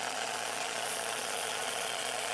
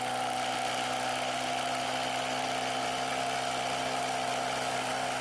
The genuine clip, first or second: second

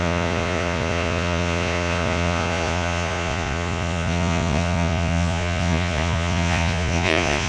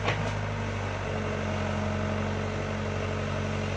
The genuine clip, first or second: second